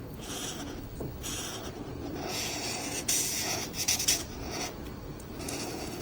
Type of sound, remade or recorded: remade